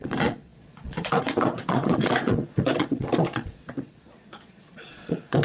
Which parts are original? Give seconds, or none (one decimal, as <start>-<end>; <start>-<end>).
none